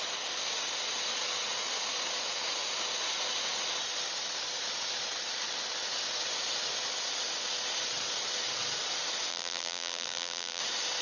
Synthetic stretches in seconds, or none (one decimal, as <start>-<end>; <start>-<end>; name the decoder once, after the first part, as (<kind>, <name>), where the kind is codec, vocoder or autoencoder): 9.3-10.6 (vocoder, BigVGAN v2)